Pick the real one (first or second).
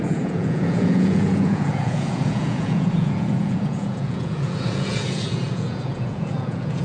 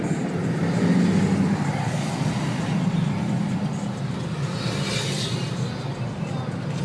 second